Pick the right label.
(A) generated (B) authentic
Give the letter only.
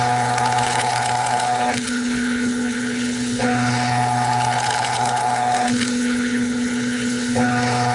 A